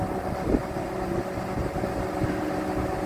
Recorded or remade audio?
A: recorded